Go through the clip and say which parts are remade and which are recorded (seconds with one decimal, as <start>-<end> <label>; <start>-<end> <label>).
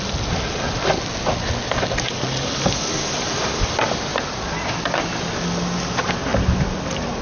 0.0-4.1 recorded; 4.1-4.7 remade; 4.7-6.3 recorded; 6.3-7.2 remade